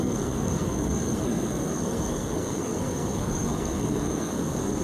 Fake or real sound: fake